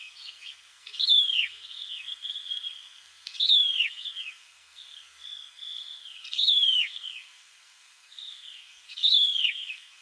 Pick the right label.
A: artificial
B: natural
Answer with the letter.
A